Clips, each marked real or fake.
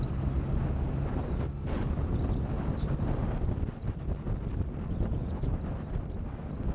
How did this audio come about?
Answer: real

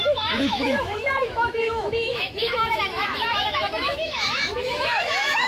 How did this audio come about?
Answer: fake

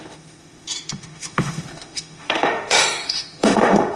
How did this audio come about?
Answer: fake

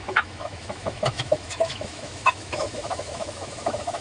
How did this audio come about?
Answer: fake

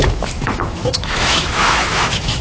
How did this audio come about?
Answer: fake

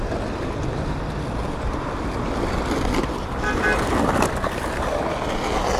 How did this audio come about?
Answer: real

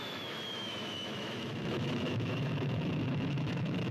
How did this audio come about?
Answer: fake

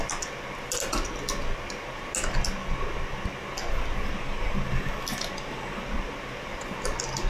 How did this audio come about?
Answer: real